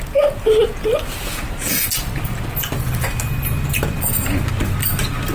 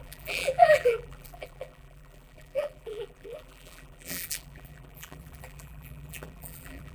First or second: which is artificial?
second